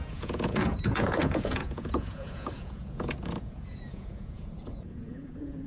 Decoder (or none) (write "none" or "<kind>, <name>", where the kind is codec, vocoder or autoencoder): vocoder, Vocos